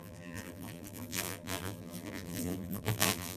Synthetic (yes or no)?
yes